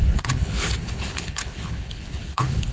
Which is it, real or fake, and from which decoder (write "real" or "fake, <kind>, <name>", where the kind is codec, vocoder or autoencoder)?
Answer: fake, codec, HILCodec